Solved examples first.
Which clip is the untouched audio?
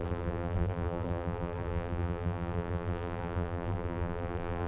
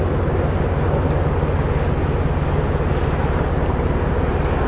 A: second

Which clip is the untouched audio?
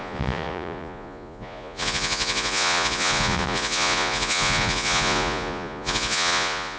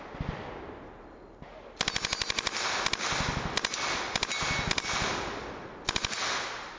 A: second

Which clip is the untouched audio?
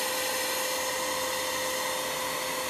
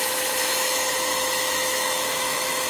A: first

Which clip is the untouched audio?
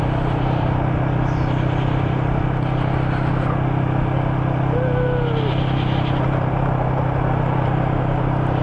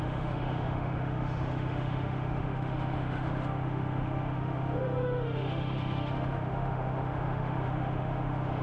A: first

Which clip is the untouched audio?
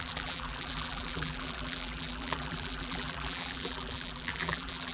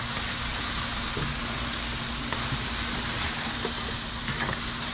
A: second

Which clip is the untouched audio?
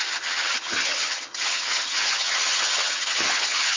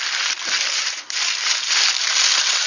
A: second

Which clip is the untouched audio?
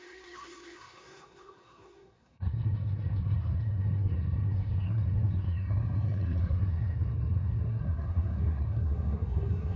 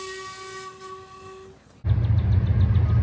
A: second